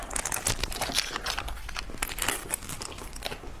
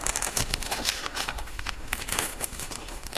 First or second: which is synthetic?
second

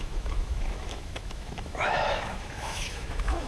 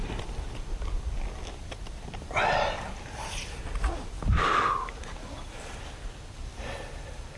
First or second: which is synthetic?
first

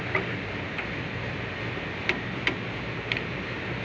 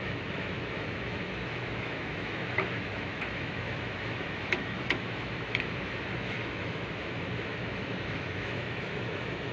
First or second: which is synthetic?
second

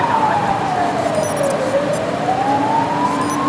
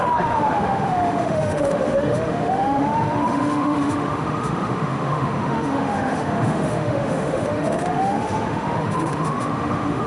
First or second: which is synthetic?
second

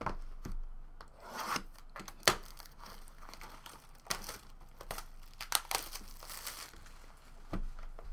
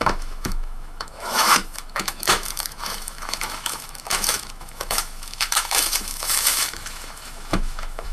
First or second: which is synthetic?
second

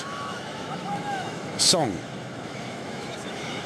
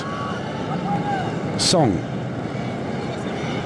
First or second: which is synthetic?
first